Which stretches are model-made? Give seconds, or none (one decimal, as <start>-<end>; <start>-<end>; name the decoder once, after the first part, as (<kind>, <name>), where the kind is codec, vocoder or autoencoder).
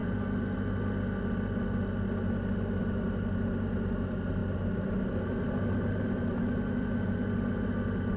none